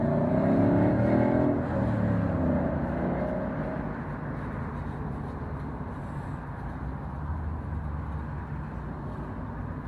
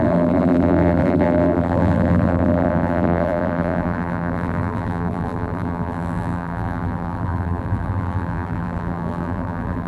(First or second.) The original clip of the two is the first